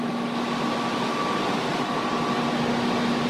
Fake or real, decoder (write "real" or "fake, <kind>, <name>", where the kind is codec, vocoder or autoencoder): real